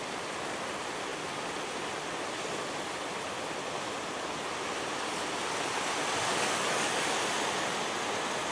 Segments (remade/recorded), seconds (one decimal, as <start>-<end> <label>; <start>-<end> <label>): 0.0-6.2 recorded; 6.2-7.0 remade; 7.0-8.5 recorded